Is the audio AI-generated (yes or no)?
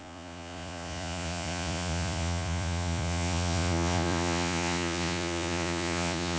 yes